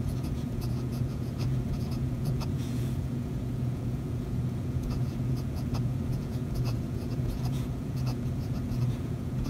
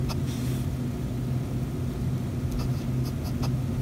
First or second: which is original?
second